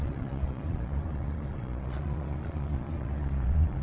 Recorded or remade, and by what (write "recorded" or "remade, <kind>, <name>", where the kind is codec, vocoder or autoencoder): remade, vocoder, Vocos